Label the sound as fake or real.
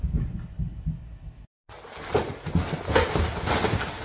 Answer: real